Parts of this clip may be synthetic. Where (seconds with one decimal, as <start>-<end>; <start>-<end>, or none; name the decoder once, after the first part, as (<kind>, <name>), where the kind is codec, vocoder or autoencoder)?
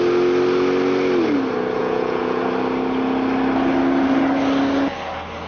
1.8-2.4 (vocoder, Vocos)